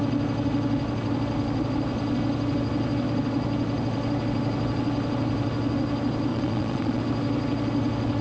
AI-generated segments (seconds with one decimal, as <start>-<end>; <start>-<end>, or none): 6.3-7.0